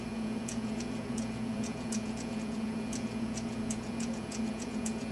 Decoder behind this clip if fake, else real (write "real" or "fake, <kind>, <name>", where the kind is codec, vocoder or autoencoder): fake, vocoder, Vocos